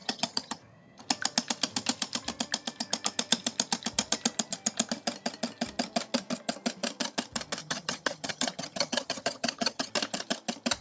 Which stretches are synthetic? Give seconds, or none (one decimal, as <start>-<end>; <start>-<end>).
0.0-1.0; 7.6-9.9